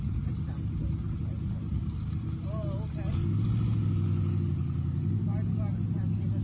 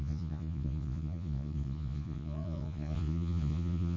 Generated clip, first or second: second